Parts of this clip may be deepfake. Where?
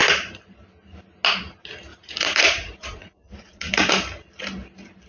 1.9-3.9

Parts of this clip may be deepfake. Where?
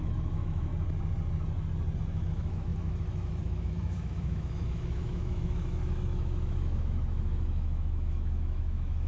0.0-0.7; 2.1-9.1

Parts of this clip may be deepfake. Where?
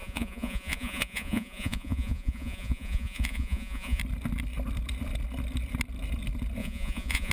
0.0-4.0; 6.6-7.3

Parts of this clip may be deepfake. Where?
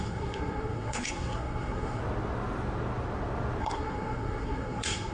0.0-2.0; 3.6-5.1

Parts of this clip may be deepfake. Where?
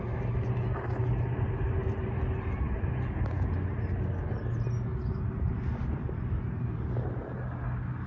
none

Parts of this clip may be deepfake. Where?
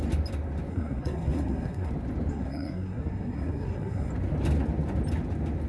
0.7-1.9; 2.3-4.1